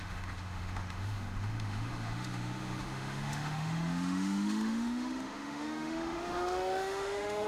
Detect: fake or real fake